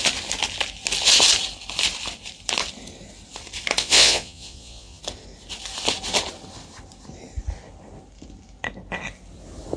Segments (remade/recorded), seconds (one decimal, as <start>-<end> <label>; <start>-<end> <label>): 0.0-3.8 recorded; 3.8-5.0 remade; 5.0-9.8 recorded